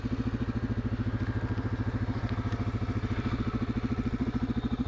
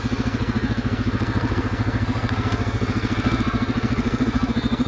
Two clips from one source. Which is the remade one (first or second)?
second